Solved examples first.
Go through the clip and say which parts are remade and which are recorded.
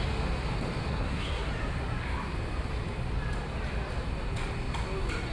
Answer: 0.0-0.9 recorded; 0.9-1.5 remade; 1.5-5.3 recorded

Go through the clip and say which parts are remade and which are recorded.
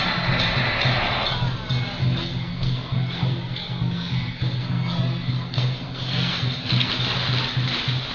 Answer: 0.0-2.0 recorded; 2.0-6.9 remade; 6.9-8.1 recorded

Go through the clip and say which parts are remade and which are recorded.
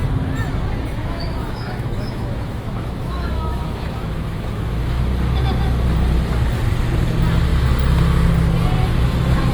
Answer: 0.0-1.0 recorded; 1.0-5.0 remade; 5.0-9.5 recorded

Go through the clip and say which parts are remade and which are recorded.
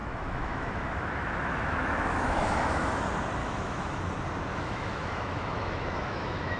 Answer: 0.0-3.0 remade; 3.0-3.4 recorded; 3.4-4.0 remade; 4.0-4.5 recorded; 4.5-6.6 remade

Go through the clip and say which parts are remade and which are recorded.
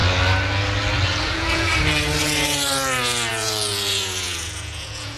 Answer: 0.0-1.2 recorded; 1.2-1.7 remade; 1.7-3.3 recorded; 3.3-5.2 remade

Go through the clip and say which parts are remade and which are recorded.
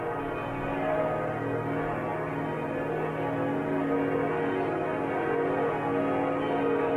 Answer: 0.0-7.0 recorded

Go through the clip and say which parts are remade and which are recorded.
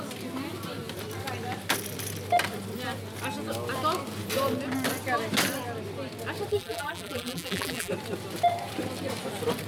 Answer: 0.0-6.5 recorded; 6.5-7.9 remade; 7.9-9.7 recorded